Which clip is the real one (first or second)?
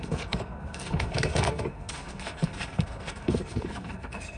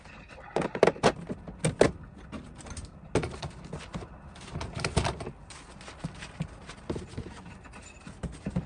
second